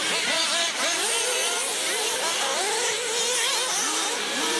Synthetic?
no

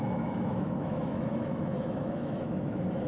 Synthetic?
yes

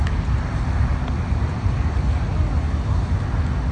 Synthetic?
no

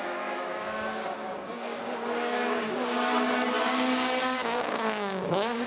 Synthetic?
yes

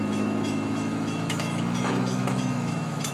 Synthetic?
yes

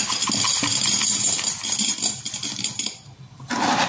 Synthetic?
no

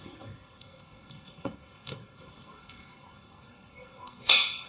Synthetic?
yes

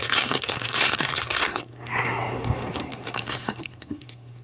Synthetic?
yes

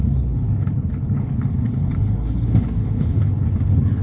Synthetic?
yes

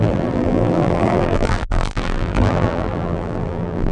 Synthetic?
yes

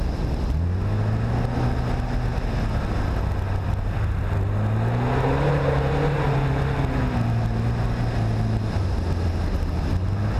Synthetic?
no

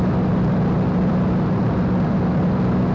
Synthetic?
no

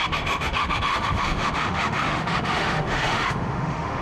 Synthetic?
yes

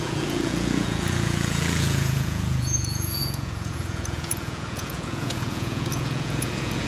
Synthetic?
yes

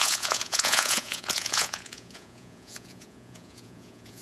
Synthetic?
yes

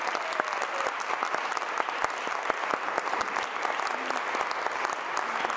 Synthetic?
no